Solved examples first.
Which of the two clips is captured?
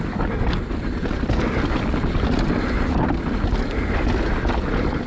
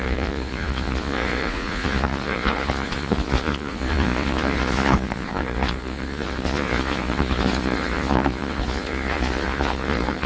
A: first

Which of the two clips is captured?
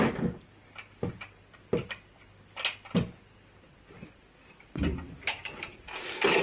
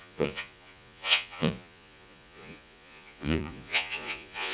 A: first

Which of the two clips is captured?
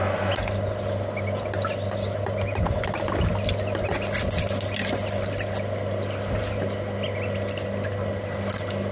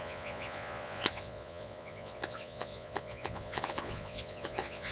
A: first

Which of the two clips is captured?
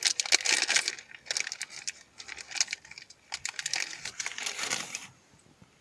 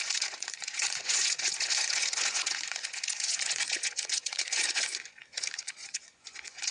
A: first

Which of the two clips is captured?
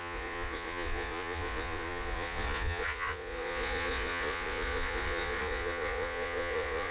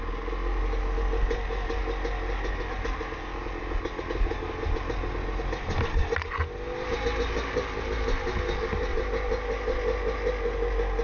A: second